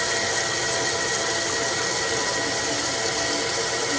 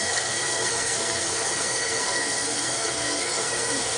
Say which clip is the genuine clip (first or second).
first